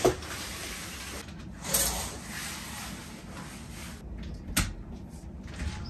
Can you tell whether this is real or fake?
real